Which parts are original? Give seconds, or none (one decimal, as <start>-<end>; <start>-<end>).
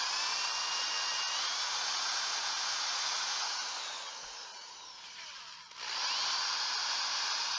0.0-0.6; 5.2-7.6